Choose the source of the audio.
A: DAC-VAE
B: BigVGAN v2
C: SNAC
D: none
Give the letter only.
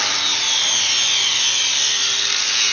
D